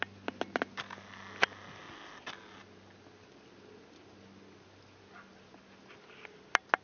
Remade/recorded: recorded